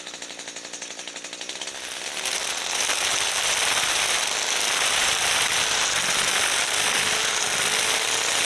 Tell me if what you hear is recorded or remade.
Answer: recorded